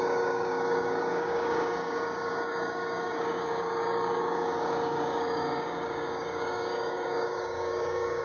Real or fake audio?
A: fake